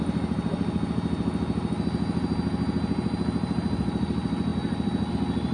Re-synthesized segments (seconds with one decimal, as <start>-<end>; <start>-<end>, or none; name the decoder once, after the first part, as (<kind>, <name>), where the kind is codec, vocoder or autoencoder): none